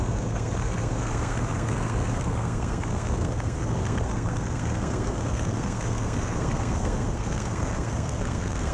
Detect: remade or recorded remade